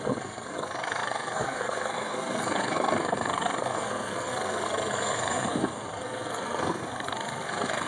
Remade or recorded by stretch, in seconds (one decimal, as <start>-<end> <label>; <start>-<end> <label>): 0.0-7.9 remade